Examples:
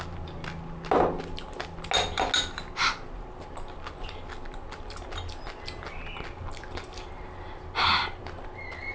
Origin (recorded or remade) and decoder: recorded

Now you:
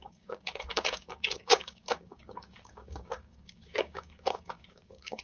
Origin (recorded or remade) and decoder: remade, codec, DAC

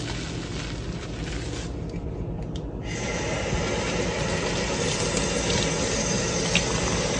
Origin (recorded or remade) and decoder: recorded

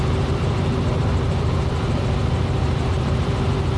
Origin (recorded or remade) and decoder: remade, vocoder, BigVGAN v2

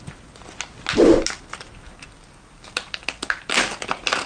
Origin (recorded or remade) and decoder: recorded